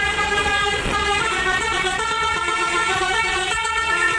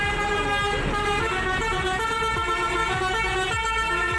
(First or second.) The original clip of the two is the second